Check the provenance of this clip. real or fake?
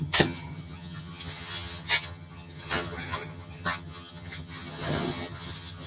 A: fake